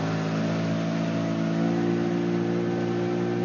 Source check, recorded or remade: recorded